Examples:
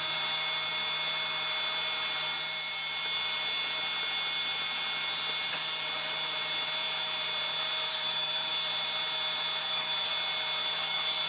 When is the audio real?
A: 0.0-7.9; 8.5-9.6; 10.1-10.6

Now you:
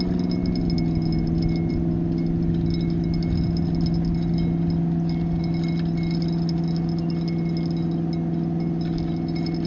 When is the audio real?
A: 0.0-9.7

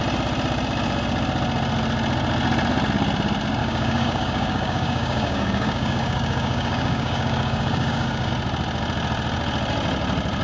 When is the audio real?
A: 0.0-3.6; 8.3-10.4